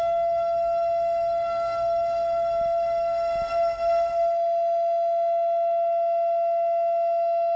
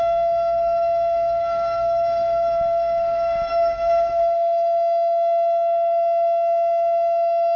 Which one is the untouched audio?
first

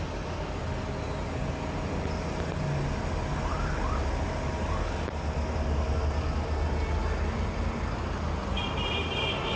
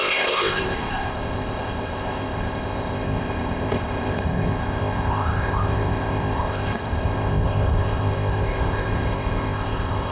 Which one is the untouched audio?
first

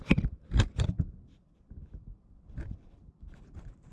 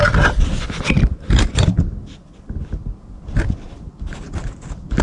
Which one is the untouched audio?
second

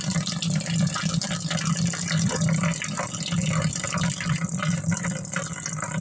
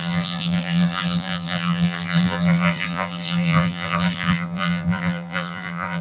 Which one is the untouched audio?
first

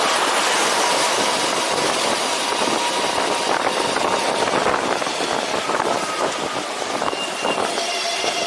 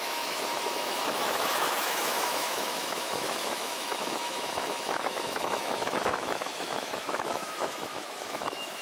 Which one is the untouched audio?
first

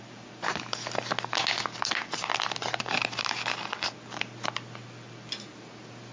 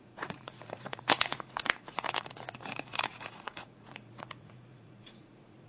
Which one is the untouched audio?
first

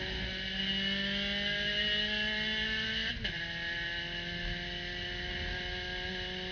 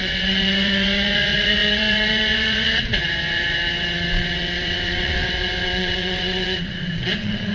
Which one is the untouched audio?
first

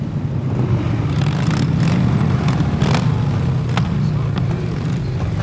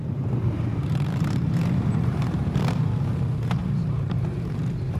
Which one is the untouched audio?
first